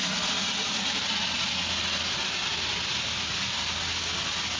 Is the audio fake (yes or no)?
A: no